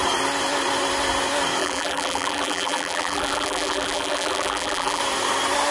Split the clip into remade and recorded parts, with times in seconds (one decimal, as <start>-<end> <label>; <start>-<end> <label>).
0.0-1.6 recorded; 1.6-5.0 remade; 5.0-5.7 recorded